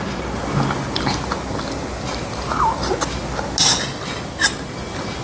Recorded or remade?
recorded